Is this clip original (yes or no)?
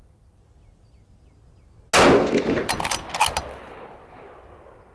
yes